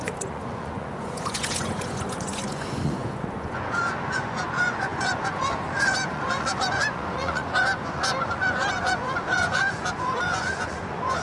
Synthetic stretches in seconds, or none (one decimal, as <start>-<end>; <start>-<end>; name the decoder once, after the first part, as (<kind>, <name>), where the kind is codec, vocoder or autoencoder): 0.0-11.2 (vocoder, Vocos)